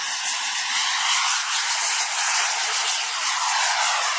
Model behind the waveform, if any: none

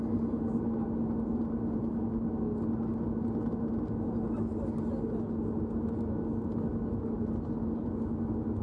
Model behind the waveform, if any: none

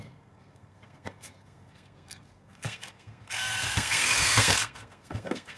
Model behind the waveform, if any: codec, SNAC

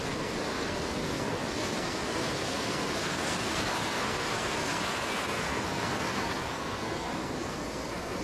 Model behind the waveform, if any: codec, SNAC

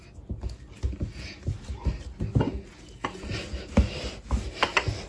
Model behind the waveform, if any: none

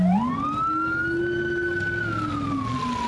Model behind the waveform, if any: none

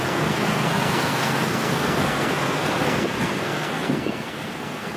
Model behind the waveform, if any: codec, SNAC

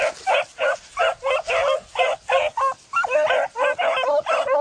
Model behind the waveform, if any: none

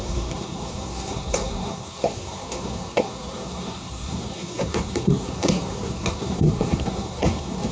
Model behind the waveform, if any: codec, SNAC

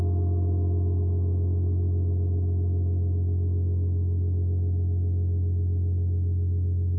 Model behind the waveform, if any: none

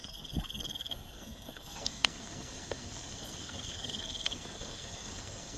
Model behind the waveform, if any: codec, SNAC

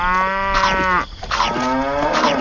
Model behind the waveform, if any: none